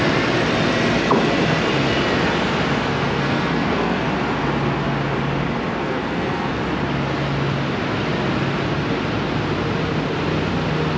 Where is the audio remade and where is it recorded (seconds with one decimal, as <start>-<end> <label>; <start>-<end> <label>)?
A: 0.0-2.9 recorded; 2.9-4.1 remade; 4.1-5.8 recorded; 5.8-6.5 remade; 6.5-11.0 recorded